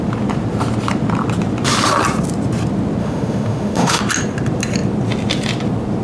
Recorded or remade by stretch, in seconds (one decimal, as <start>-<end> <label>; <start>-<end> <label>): 0.0-3.0 recorded; 3.0-4.0 remade; 4.0-6.0 recorded

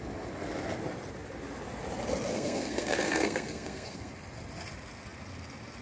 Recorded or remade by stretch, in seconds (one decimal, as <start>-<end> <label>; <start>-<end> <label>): 0.0-2.3 recorded; 2.3-4.1 remade; 4.1-5.8 recorded

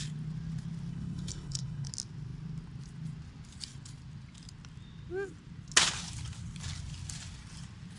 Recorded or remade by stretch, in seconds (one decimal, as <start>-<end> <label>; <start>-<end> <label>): 0.0-0.9 recorded; 0.9-1.9 remade; 1.9-8.0 recorded

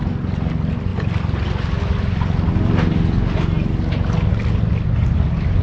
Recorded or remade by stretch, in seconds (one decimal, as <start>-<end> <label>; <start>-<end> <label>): 0.0-5.6 recorded